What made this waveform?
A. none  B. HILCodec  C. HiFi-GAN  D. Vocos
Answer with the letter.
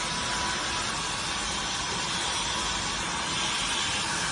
A